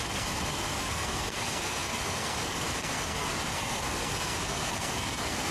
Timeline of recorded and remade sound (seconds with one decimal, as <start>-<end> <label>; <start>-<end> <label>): 0.0-5.5 remade